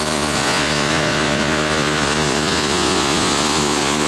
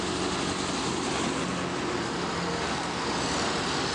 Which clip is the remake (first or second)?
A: first